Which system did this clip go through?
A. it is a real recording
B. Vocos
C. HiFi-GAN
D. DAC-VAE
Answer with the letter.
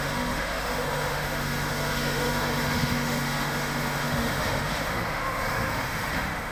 D